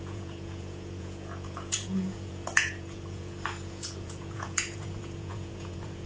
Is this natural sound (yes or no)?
no